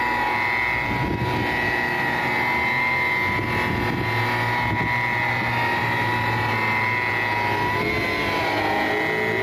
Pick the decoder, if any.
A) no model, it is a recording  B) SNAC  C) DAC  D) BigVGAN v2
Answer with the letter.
A